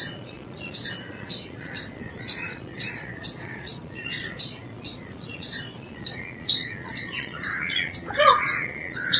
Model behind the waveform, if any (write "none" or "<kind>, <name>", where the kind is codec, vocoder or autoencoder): vocoder, Vocos